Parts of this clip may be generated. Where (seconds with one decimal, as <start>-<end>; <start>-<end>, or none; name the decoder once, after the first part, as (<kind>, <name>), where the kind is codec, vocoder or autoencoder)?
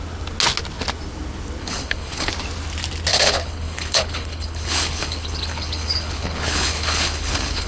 1.6-2.3 (codec, HILCodec); 3.1-7.7